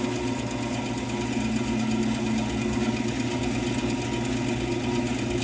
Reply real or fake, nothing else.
real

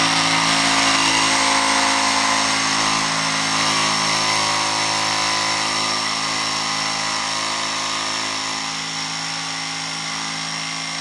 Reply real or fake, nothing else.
real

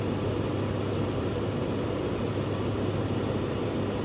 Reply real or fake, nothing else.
real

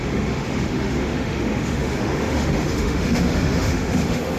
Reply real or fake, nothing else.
fake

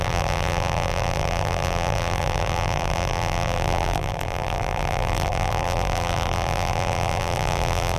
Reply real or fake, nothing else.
fake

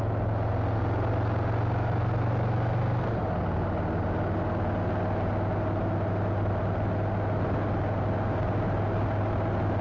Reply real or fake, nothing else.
real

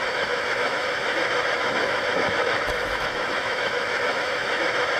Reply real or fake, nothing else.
fake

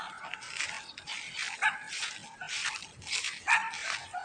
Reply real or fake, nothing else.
real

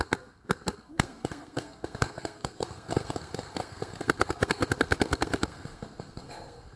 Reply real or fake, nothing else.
fake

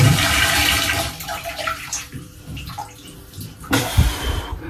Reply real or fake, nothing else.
fake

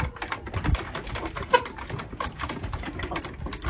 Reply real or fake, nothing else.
real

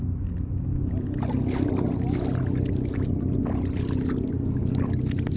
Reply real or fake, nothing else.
real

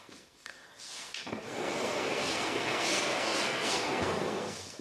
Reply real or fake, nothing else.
fake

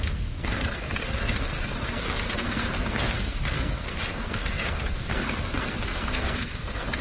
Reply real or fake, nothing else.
fake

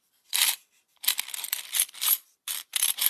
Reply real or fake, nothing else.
fake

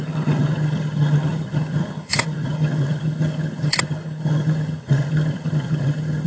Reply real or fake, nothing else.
fake